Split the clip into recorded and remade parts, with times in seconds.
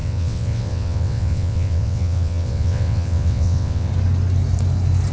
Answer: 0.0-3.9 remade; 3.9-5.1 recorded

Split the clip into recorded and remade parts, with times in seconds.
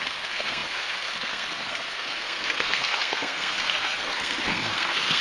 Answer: 0.0-5.2 remade